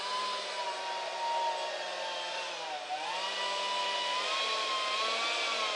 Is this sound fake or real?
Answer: real